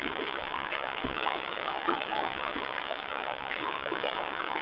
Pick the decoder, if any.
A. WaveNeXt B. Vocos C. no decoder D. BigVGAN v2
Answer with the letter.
A